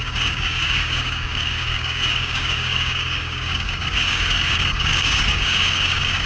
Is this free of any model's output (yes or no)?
no